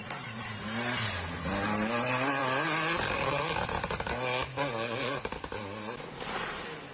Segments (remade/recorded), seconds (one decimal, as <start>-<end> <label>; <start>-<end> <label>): 0.0-6.9 recorded